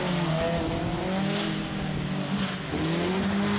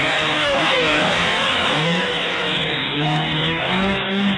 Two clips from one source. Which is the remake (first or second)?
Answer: second